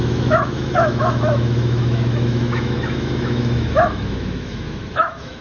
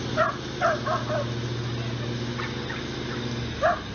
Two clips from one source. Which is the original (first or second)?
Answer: second